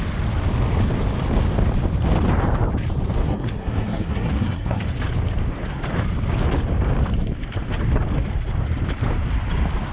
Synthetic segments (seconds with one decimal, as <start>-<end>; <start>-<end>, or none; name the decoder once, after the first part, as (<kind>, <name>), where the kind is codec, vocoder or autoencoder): 3.2-4.8 (codec, SNAC)